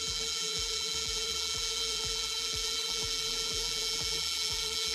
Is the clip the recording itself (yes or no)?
no